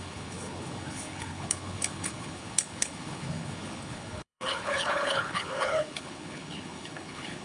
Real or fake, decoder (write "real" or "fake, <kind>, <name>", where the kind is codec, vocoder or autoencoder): fake, codec, HILCodec